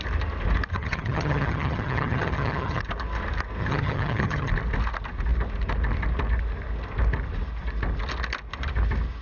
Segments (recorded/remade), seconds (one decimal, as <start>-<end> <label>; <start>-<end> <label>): 0.0-0.7 recorded; 0.7-2.8 remade; 2.8-3.6 recorded; 3.6-4.5 remade; 4.5-9.2 recorded

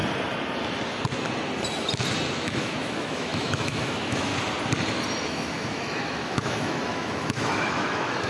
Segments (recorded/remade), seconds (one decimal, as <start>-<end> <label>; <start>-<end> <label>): 0.0-2.3 recorded; 2.3-4.3 remade; 4.3-5.2 recorded; 5.2-8.3 remade

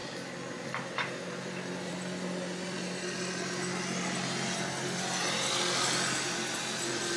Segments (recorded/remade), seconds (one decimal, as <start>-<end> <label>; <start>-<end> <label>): 0.0-7.2 recorded

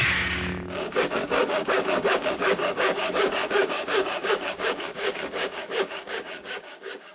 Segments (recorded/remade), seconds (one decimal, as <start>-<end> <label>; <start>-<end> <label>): 0.0-7.1 remade

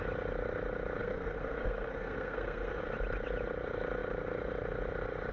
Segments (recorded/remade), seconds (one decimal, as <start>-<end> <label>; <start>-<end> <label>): 0.0-1.0 recorded; 1.0-2.8 remade; 2.8-5.3 recorded

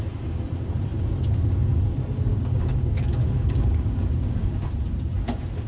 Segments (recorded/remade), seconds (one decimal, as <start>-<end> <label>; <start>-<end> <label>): 0.0-2.3 recorded; 2.3-4.6 remade; 4.6-5.7 recorded

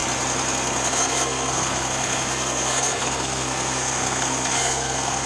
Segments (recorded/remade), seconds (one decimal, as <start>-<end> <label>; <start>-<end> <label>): 0.0-0.8 recorded; 0.8-5.3 remade

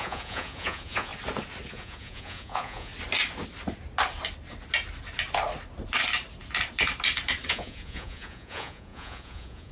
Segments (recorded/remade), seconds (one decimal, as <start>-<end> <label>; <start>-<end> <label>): 0.0-1.1 remade; 1.1-1.7 recorded; 1.7-2.9 remade; 2.9-7.5 recorded; 7.5-9.7 remade